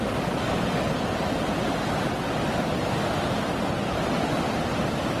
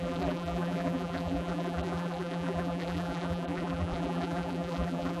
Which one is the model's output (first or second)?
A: second